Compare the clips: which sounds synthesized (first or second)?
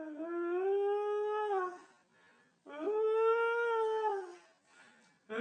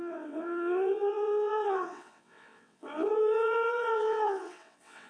second